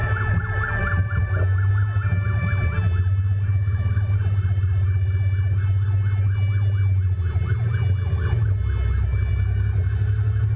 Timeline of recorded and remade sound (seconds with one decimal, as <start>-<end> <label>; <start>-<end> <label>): 0.0-10.6 recorded